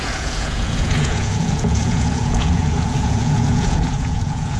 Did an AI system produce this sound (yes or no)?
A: yes